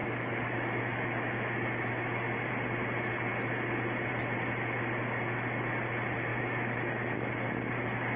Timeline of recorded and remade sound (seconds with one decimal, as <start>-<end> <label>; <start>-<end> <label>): 0.0-2.5 remade; 2.5-6.3 recorded; 6.3-7.3 remade; 7.3-8.2 recorded